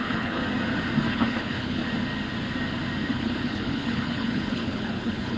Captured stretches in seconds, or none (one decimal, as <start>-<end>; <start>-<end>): 0.4-1.1; 1.8-3.1

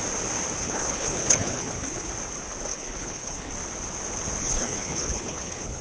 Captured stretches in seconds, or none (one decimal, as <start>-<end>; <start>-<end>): 0.0-0.6; 2.1-2.7; 3.5-4.4

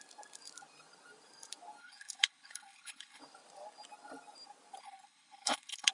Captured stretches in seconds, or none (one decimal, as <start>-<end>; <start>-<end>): 0.0-1.8; 3.2-4.8

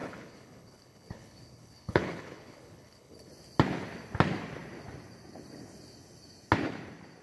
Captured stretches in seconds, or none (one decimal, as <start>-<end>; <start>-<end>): 3.3-7.2

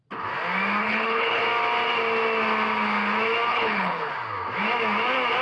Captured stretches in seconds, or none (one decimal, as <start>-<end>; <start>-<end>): 0.0-0.8; 1.4-3.5; 4.1-5.4

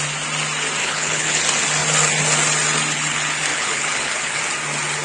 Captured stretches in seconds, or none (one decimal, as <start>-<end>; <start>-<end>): 0.0-0.8; 1.4-3.5; 4.4-5.0